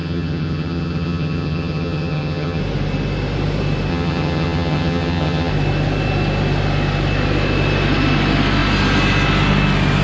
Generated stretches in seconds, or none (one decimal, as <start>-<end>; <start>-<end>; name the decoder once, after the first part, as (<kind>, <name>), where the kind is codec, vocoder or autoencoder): 0.0-2.6 (vocoder, HiFi-GAN); 3.9-5.5